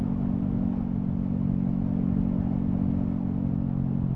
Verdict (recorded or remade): recorded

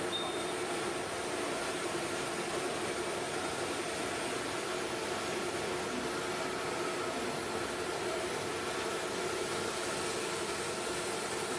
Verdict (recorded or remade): recorded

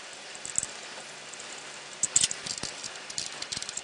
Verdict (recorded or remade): recorded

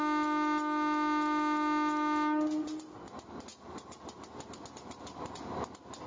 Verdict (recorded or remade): recorded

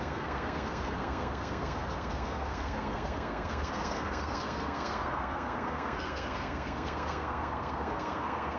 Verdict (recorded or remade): remade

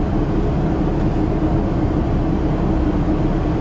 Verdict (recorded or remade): recorded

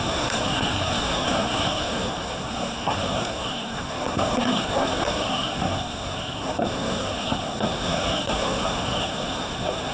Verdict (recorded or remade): remade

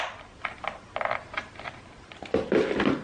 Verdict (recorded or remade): recorded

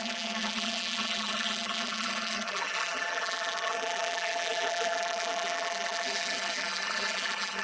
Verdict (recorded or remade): remade